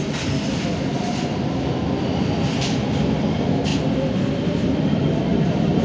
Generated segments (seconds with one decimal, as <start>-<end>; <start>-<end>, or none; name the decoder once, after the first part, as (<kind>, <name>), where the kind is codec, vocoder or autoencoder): 3.7-4.7 (vocoder, BigVGAN v2)